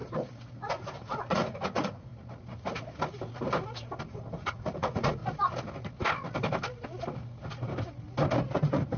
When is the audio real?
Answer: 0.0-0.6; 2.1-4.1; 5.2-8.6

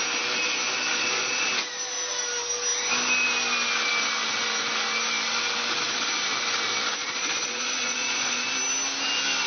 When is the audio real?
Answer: 0.0-0.9; 1.5-7.0; 8.5-9.5